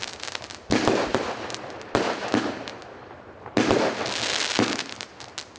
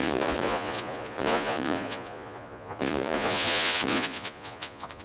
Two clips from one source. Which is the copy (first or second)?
second